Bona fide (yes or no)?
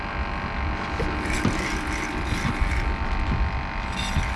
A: yes